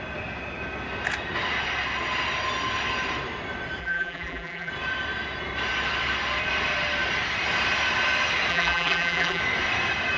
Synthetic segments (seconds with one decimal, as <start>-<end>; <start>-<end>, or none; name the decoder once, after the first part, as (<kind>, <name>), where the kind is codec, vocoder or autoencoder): 3.8-4.7 (vocoder, BigVGAN v2); 8.5-9.4